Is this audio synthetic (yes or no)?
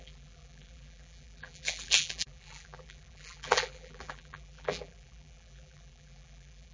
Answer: yes